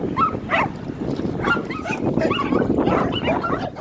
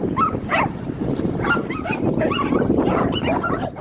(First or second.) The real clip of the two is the first